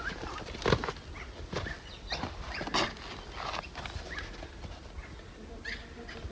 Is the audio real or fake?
real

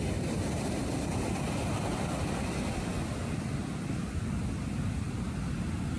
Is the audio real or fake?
real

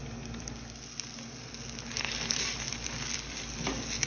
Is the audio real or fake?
real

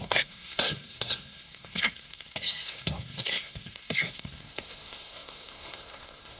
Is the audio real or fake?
fake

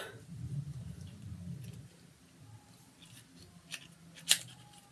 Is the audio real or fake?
real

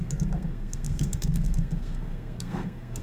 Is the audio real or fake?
fake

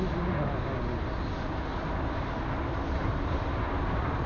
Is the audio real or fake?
real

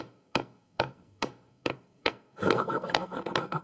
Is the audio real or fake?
fake